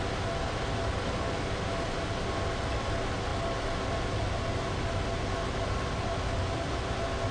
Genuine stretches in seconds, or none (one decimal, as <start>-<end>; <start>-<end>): 0.0-7.3